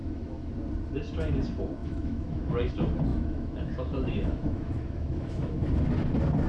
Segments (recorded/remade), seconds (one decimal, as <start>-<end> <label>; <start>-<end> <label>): 0.0-0.5 remade; 0.5-1.8 recorded; 1.8-2.7 remade; 2.7-3.1 recorded; 3.1-5.6 remade; 5.6-6.5 recorded